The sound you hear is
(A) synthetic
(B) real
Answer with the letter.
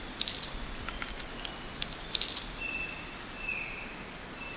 B